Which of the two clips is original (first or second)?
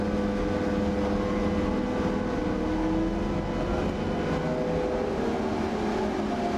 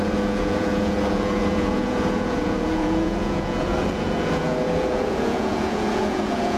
first